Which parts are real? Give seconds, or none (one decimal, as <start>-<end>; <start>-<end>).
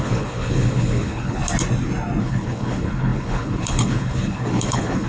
1.4-2.2